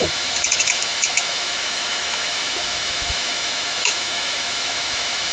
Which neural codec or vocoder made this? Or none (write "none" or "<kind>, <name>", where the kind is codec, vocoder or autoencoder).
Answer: autoencoder, DAC-VAE